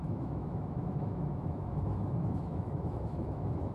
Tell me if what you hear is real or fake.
fake